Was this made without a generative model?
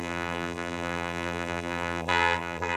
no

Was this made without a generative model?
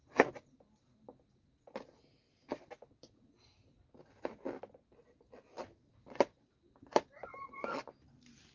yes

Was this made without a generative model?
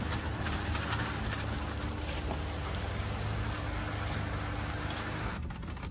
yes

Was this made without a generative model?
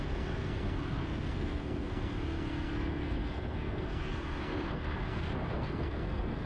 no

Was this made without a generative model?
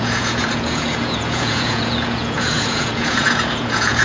no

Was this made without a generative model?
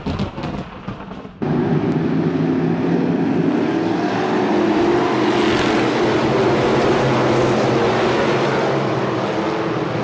yes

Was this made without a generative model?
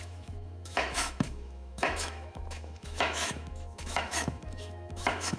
no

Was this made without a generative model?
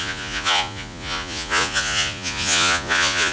no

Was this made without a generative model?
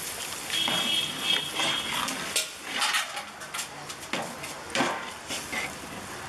yes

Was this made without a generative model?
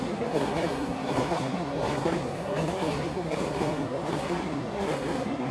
no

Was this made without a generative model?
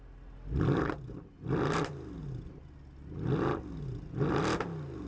yes